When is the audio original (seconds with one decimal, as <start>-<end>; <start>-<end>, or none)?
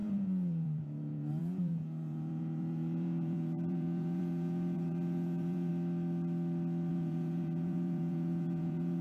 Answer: 5.7-6.9